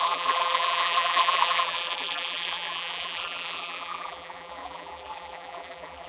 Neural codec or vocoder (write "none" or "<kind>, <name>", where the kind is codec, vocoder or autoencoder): vocoder, BigVGAN v2